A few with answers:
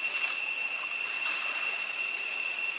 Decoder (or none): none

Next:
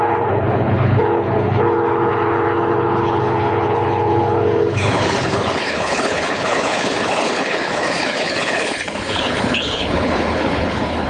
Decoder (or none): codec, HILCodec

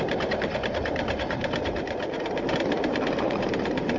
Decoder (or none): vocoder, BigVGAN v2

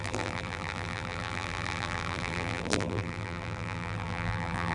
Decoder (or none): vocoder, BigVGAN v2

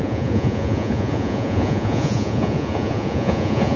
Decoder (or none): vocoder, Vocos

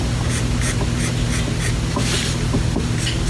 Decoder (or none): none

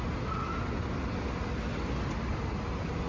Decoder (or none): none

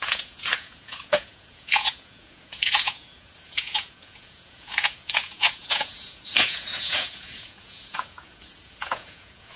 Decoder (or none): vocoder, Vocos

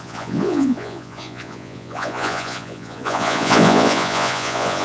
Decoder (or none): vocoder, Vocos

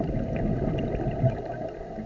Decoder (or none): none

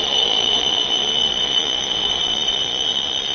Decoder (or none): vocoder, Vocos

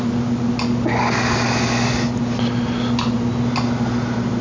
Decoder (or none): none